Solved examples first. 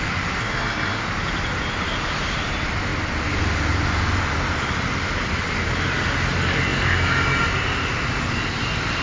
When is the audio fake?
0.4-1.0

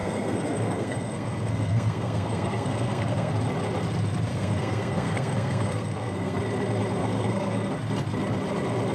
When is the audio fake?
0.0-3.3; 4.3-6.4; 7.0-7.7

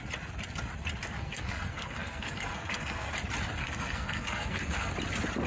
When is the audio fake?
1.2-3.1; 3.6-4.9